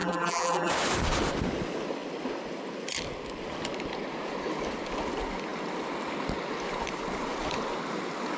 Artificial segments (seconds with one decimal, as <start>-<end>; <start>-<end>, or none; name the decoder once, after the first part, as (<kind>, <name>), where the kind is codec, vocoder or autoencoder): 0.0-0.7 (vocoder, BigVGAN v2)